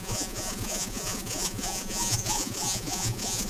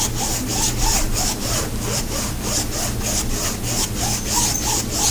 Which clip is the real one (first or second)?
second